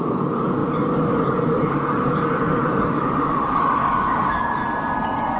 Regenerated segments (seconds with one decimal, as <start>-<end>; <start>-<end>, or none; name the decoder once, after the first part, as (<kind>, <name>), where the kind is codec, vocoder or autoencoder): 0.0-4.6 (codec, DAC)